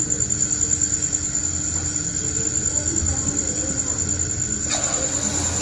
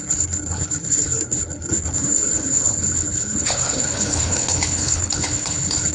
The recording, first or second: first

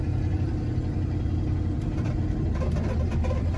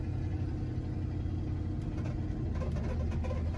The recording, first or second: second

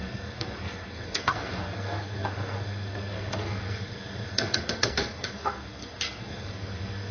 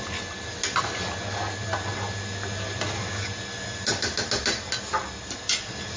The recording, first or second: second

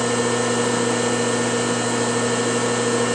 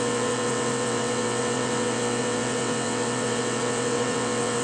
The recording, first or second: first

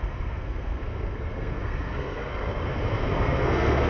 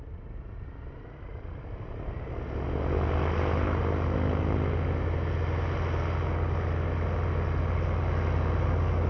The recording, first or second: second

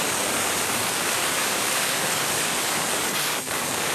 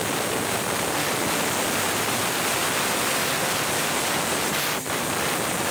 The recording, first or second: second